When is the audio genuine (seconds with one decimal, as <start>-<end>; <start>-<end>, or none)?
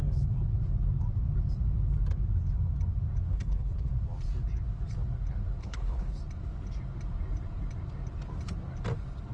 0.0-3.3; 3.9-5.6; 6.2-9.3